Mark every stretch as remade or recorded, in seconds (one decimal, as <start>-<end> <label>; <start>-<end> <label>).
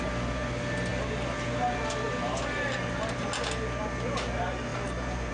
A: 0.0-5.3 recorded